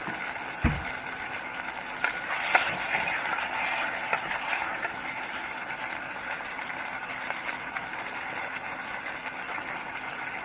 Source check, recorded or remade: recorded